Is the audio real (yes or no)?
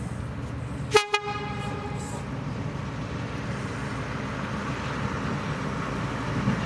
yes